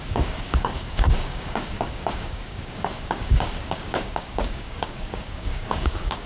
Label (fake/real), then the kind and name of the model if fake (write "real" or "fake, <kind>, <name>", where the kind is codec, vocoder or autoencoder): fake, codec, DAC